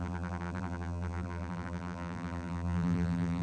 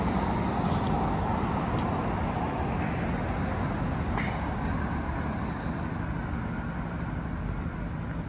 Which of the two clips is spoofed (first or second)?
first